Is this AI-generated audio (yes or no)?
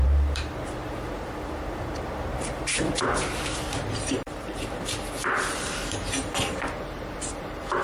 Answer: yes